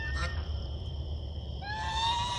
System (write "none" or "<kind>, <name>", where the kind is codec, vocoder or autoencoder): vocoder, BigVGAN v2